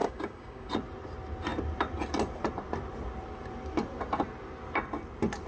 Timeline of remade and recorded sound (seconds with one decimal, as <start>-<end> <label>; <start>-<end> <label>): 0.0-0.7 remade; 0.7-5.5 recorded